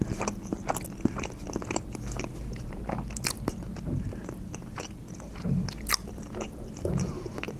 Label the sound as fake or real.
real